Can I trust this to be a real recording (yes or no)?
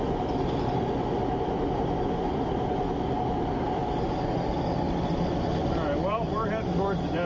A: yes